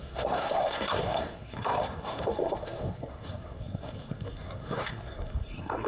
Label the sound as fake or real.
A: fake